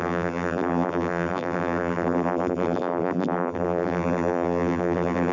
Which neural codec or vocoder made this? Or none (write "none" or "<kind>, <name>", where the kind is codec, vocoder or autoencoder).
vocoder, BigVGAN v2